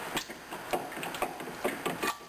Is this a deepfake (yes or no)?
no